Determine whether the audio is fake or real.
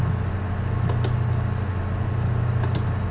real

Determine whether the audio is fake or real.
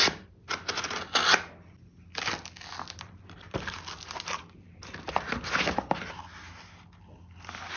real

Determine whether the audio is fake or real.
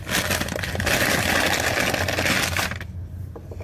real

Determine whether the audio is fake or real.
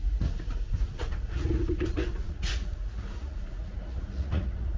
fake